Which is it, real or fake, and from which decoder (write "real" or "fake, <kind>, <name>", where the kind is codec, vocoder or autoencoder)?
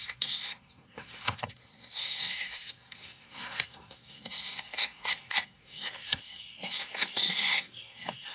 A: fake, codec, SNAC